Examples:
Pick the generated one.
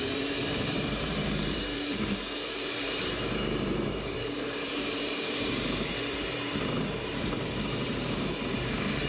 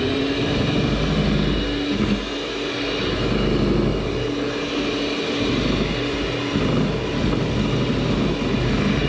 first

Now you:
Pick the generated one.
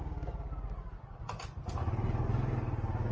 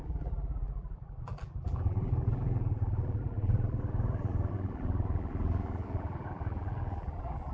second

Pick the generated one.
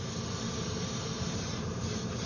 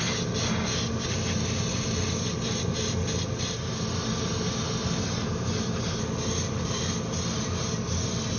first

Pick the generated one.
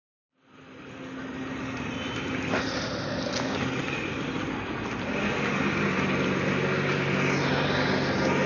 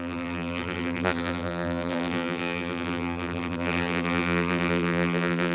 second